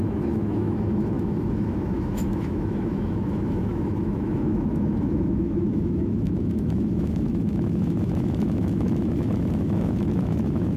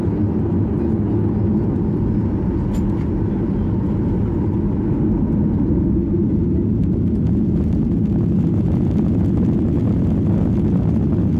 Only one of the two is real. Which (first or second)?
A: second